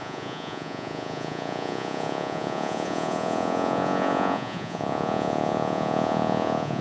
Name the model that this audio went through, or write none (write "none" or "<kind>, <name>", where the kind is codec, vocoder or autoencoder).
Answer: vocoder, Vocos